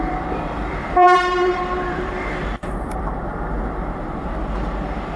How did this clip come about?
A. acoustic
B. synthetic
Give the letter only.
B